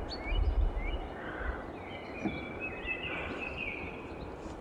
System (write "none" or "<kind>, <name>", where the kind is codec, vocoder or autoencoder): none